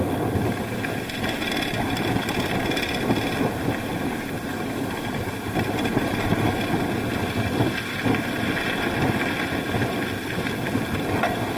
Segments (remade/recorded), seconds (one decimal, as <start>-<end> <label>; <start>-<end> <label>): 0.0-4.5 recorded; 4.5-5.3 remade; 5.3-11.6 recorded